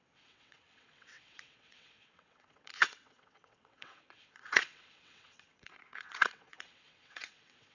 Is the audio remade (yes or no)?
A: yes